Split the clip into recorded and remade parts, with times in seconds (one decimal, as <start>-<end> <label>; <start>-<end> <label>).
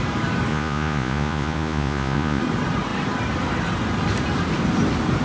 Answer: 0.0-0.5 recorded; 0.5-2.4 remade; 2.4-5.2 recorded